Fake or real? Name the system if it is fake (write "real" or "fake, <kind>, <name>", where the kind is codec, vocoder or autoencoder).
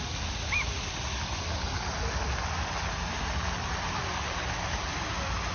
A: real